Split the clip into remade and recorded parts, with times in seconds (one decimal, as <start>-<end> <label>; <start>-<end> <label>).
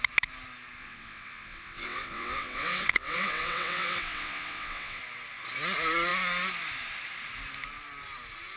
0.0-0.8 recorded; 0.8-5.0 remade; 5.0-8.6 recorded